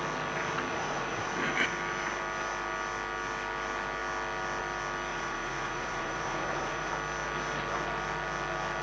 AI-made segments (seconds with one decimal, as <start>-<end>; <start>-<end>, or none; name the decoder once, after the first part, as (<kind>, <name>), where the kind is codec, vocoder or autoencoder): 0.7-1.3 (vocoder, Vocos); 5.1-6.9